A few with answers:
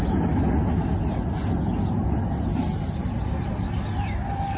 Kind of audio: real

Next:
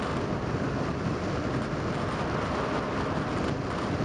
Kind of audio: real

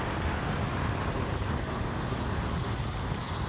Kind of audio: real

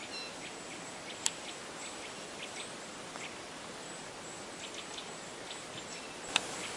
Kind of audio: real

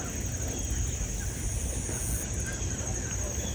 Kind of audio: real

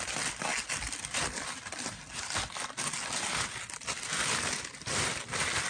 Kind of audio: real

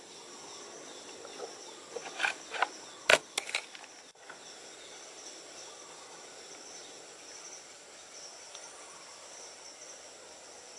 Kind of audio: real